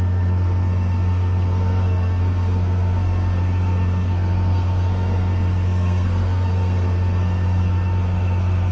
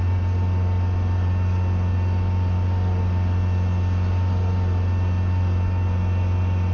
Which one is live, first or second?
second